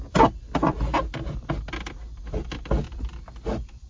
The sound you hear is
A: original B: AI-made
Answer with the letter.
A